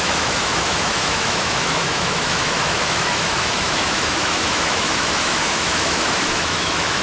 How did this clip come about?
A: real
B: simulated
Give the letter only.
B